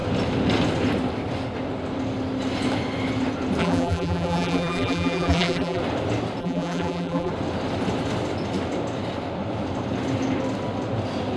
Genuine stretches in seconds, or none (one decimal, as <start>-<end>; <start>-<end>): 0.0-3.6; 5.8-6.4; 7.3-11.4

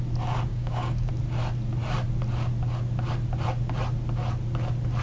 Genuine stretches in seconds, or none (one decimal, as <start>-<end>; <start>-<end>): 0.0-0.5; 1.1-5.0

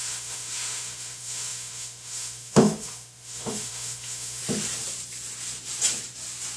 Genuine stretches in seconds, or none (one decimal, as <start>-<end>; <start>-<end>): 4.4-6.6

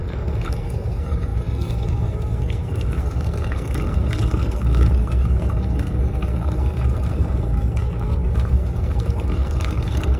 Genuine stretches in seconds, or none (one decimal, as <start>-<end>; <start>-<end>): none

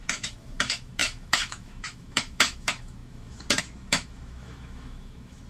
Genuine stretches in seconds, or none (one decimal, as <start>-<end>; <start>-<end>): none

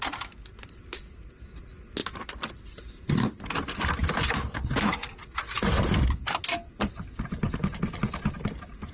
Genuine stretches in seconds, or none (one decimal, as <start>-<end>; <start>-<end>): 0.0-8.9

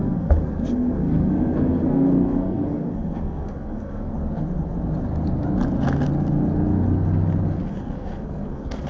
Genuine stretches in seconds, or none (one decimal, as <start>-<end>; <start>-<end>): 4.1-7.7

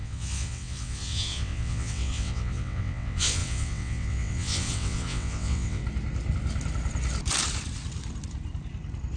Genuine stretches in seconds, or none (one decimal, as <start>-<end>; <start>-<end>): 5.8-9.2